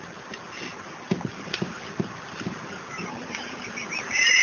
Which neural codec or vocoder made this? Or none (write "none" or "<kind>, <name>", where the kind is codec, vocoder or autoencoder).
none